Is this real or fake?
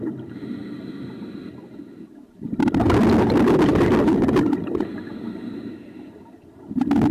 real